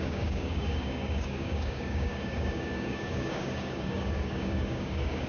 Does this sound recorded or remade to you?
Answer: remade